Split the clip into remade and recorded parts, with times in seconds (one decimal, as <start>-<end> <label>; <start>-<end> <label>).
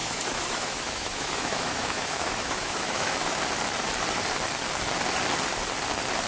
0.0-3.4 remade; 3.4-6.3 recorded